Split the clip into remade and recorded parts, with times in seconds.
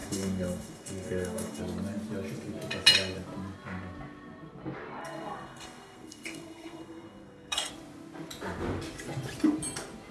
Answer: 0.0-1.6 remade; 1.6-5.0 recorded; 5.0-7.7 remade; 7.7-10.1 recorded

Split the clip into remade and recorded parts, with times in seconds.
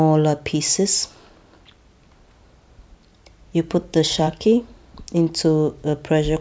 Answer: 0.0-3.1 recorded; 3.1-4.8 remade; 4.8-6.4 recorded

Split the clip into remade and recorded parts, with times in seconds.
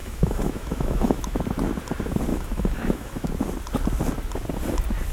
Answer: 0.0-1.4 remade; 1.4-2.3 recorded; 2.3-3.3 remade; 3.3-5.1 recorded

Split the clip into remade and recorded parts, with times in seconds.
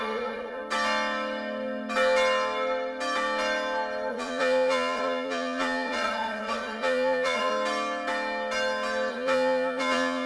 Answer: 0.0-0.6 remade; 0.6-4.1 recorded; 4.1-7.5 remade; 7.5-9.1 recorded; 9.1-10.3 remade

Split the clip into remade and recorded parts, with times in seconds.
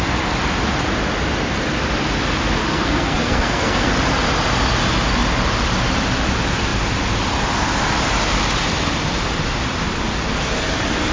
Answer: 0.0-2.6 recorded; 2.6-3.9 remade; 3.9-11.1 recorded